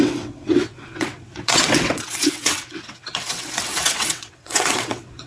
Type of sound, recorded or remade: remade